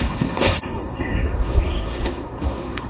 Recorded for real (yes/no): no